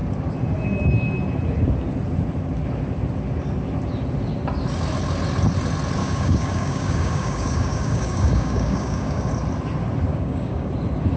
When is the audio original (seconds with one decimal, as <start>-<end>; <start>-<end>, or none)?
0.0-6.0; 9.3-10.1; 10.7-11.2